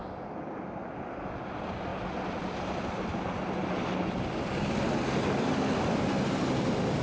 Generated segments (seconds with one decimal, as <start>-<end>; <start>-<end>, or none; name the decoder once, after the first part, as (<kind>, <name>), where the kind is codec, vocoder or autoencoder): none